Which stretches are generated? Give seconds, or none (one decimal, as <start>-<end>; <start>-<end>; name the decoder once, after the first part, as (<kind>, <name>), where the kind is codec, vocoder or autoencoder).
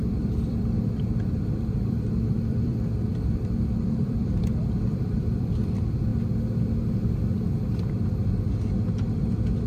0.0-6.1 (vocoder, BigVGAN v2); 7.9-9.7